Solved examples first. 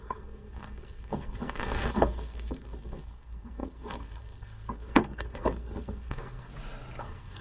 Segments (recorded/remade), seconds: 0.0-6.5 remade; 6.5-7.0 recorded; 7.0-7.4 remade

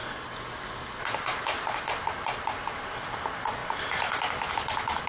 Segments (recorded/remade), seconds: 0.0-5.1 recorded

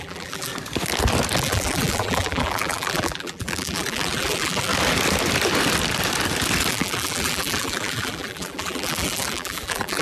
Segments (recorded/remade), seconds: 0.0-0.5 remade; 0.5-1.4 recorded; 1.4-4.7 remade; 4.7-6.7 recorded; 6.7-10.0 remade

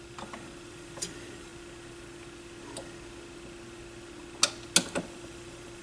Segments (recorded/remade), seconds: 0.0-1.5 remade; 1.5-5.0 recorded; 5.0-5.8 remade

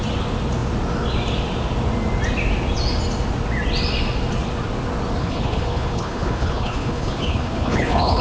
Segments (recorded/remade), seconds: 0.0-5.2 recorded; 5.2-8.2 remade